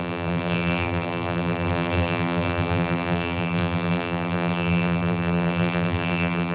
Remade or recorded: remade